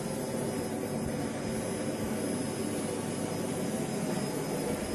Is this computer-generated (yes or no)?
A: no